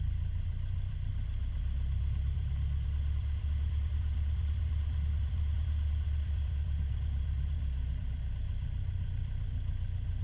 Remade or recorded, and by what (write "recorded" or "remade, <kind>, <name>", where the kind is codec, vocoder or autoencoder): remade, vocoder, BigVGAN v2